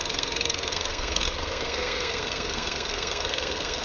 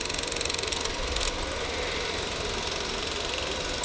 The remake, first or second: first